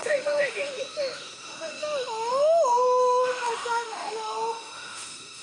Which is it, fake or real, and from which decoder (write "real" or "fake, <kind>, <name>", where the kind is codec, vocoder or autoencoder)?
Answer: fake, autoencoder, DAC-VAE